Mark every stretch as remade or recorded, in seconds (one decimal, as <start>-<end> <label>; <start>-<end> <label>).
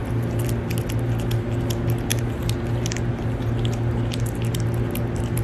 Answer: 0.0-5.4 recorded